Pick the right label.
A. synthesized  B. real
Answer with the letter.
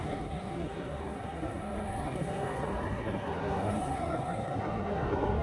A